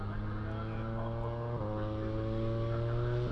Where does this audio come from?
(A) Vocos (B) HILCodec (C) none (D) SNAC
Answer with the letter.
C